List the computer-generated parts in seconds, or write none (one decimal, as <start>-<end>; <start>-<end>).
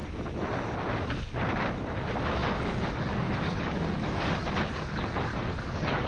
2.4-4.4; 5.3-6.1